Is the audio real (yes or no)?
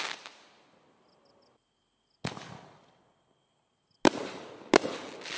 yes